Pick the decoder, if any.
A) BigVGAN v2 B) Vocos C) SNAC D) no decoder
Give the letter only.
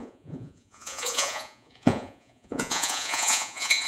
B